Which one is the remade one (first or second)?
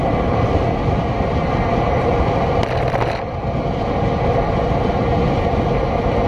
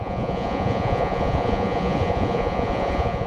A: second